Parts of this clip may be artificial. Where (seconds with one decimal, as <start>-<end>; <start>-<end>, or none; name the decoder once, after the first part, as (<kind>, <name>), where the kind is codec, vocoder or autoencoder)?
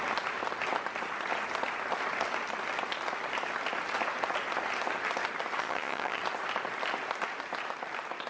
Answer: 5.6-6.2 (vocoder, HiFi-GAN)